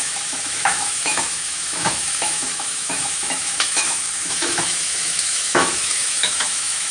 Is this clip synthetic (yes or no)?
yes